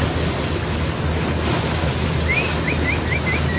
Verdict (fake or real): real